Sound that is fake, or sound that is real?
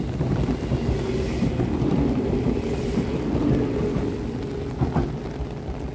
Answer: real